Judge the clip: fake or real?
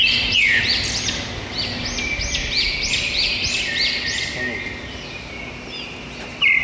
real